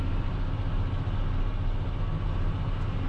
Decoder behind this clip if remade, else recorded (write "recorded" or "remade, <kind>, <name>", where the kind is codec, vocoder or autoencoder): recorded